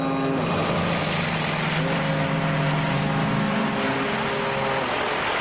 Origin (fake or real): real